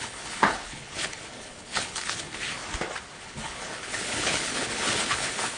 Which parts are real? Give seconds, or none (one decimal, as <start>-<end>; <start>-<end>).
2.6-3.2